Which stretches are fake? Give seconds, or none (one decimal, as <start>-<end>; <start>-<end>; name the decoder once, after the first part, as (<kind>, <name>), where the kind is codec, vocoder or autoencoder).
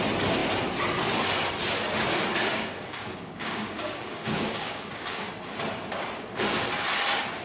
2.5-5.3 (codec, DAC)